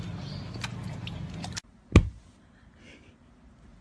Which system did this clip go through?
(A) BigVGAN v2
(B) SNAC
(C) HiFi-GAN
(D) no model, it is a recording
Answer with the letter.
D